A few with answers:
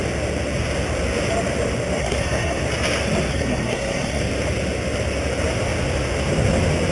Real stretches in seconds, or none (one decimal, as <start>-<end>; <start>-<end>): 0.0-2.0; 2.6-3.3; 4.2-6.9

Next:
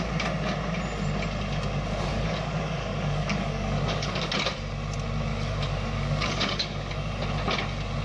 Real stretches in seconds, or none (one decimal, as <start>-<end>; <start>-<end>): 0.0-2.1; 4.3-5.3; 6.9-8.0

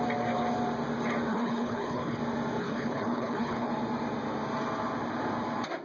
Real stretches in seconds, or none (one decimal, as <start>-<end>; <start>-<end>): 0.0-1.3; 2.2-2.6; 3.7-5.8